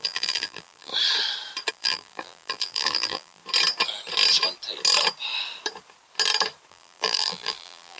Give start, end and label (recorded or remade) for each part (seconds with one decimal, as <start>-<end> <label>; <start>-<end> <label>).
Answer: 0.0-0.9 remade; 0.9-1.7 recorded; 1.7-3.4 remade; 3.4-6.7 recorded; 6.7-8.0 remade